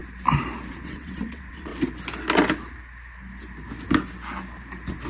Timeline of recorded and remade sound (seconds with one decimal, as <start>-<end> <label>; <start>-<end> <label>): 0.0-0.8 recorded; 0.8-1.7 remade; 1.7-5.1 recorded